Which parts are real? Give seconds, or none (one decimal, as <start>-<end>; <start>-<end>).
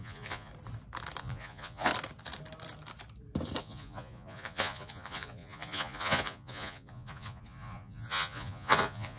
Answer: 0.5-1.2; 1.9-3.6